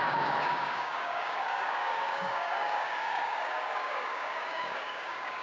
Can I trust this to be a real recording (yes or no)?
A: no